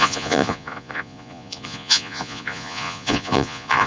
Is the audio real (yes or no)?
no